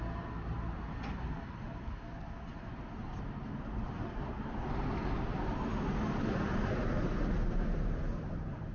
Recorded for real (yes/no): yes